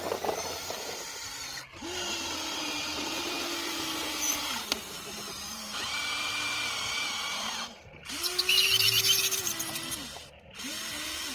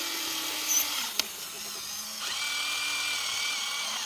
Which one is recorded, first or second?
second